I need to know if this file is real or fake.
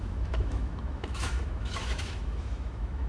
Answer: fake